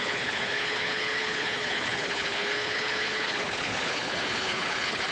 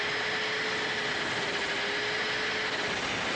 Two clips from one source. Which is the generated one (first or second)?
first